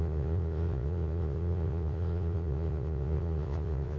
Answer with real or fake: fake